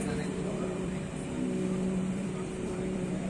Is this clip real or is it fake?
fake